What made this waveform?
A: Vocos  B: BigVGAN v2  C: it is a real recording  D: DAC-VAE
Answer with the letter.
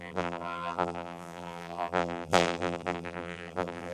B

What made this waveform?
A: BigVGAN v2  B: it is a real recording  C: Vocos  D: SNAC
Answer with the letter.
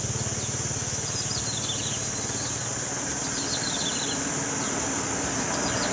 B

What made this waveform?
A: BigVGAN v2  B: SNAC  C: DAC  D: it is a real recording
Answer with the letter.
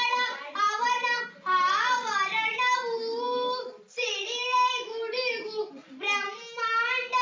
D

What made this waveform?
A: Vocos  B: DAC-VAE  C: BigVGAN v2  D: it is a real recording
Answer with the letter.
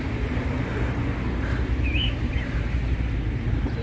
C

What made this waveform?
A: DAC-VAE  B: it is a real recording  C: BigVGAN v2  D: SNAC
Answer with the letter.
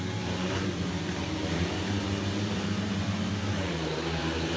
C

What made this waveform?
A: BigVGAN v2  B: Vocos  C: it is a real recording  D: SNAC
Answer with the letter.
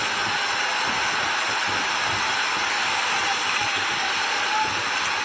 C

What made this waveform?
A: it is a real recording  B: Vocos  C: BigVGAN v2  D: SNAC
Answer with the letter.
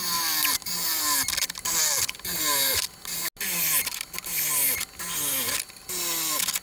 A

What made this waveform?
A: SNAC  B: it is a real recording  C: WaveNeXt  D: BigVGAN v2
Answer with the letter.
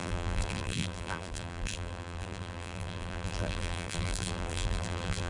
D